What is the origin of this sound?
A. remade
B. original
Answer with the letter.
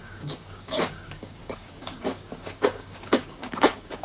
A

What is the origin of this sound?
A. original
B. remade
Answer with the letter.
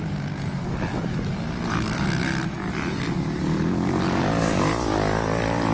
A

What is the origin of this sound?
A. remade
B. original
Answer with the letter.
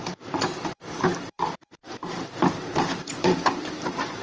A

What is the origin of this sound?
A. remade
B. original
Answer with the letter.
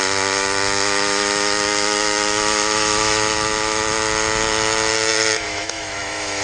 A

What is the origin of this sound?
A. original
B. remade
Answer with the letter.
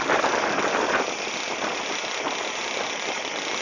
A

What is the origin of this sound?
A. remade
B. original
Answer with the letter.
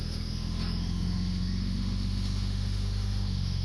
A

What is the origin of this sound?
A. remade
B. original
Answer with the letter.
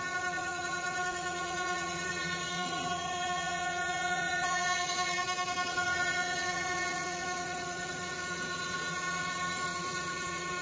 A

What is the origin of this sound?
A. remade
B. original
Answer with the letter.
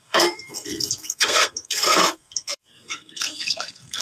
A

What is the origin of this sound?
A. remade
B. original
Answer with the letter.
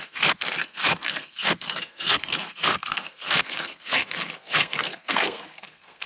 A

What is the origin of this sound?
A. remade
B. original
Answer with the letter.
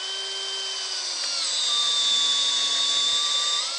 B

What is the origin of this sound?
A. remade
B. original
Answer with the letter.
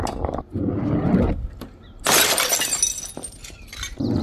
B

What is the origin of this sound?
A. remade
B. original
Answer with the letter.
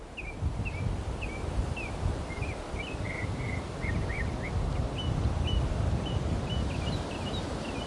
B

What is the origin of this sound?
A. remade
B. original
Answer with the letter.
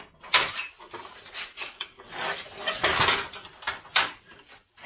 B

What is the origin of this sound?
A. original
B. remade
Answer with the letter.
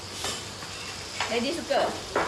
A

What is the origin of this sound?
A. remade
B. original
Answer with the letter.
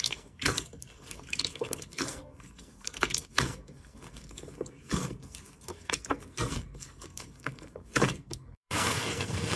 A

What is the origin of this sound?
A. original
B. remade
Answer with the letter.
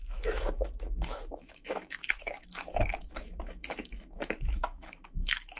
B